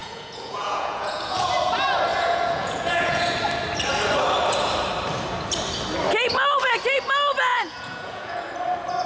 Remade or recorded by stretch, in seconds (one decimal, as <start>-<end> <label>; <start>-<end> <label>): 0.0-1.5 remade; 1.5-2.1 recorded; 2.1-3.2 remade; 3.2-7.5 recorded; 7.5-8.5 remade; 8.5-9.1 recorded